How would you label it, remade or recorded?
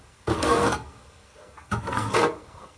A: remade